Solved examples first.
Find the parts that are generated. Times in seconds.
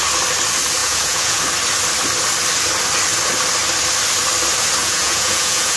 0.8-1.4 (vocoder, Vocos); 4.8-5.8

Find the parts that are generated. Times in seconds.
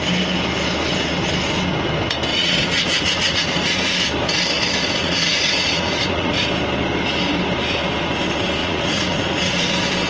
2.3-3.9 (vocoder, Vocos); 5.0-6.4; 8.6-9.7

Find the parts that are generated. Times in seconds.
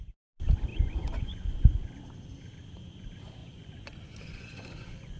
0.7-1.9 (vocoder, Vocos); 3.4-5.2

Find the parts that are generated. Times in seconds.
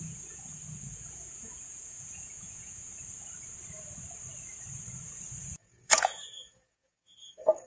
0.0-2.9 (vocoder, Vocos); 5.4-7.7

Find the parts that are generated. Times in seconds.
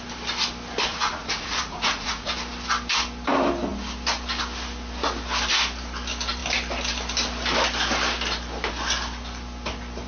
0.9-2.3 (vocoder, Vocos)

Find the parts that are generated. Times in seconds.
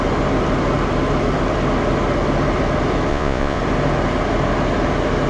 3.1-3.6 (vocoder, Vocos)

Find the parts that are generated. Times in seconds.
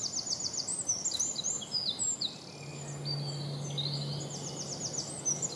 none